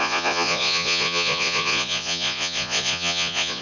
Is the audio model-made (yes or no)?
yes